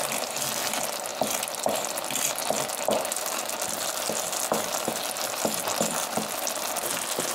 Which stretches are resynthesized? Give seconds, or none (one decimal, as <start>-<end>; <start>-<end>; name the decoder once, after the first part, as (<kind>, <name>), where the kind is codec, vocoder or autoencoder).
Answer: none